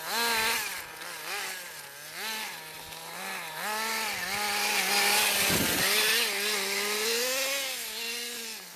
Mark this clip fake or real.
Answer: real